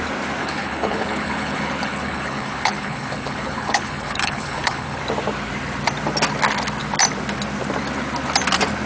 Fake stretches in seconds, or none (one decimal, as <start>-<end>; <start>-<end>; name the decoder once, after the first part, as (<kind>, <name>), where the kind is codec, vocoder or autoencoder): 0.4-5.0 (codec, HILCodec)